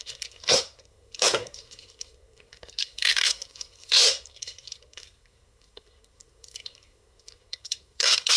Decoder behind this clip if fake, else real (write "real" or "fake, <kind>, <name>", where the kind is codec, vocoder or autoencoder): fake, codec, SNAC